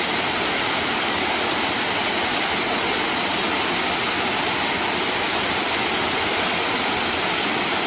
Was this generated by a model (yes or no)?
no